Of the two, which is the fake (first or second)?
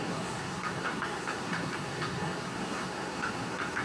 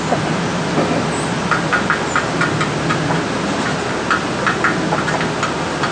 first